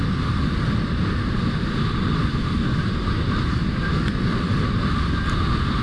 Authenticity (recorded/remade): recorded